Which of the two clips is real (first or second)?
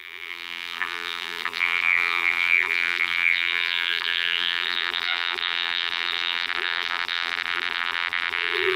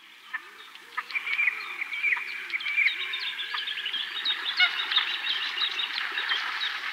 second